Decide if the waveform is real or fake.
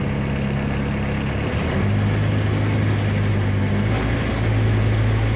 real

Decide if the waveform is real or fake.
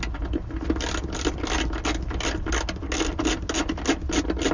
real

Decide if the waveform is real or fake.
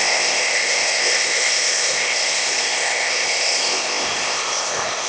fake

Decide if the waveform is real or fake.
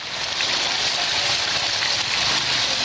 real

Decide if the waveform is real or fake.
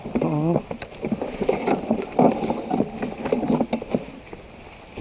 real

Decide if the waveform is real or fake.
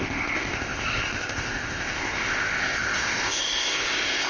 fake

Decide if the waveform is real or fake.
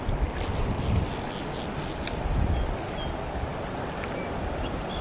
real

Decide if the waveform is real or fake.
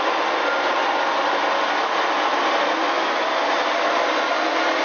real